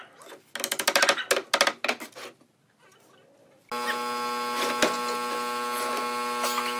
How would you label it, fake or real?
real